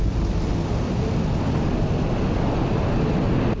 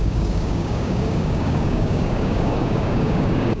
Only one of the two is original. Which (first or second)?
first